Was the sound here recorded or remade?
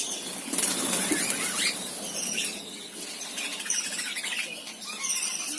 recorded